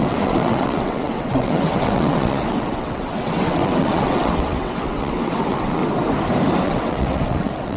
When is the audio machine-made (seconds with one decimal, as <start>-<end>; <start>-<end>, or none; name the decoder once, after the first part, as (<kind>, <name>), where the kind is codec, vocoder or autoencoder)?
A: 0.0-5.8 (vocoder, WaveNeXt); 6.6-7.8